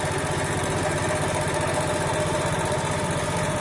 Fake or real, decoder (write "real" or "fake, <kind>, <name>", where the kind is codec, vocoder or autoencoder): real